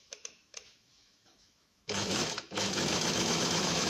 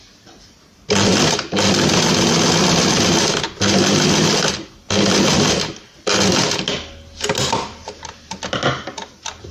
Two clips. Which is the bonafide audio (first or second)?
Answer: second